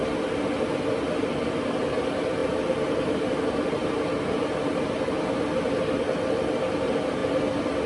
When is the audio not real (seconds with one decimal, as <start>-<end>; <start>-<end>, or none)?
none